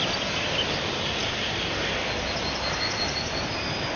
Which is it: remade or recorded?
recorded